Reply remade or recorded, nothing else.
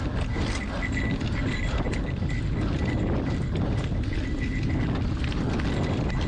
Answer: recorded